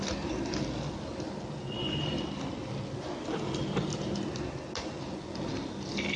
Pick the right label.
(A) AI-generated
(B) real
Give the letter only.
B